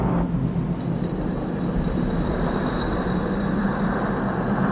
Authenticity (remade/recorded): recorded